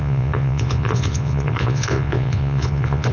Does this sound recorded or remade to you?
remade